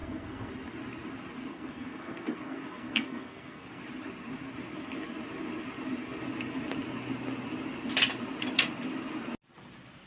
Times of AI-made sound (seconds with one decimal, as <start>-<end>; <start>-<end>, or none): 0.0-0.5; 1.5-3.8